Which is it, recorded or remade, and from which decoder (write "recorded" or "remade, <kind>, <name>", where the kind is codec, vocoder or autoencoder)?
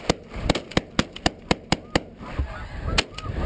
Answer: recorded